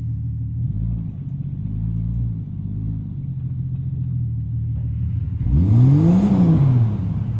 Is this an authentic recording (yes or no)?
yes